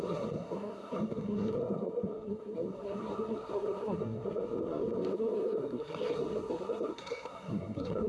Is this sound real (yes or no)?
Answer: no